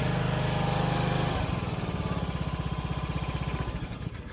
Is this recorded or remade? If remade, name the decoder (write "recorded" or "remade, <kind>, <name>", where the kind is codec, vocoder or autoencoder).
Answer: recorded